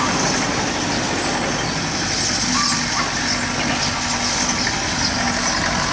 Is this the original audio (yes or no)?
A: yes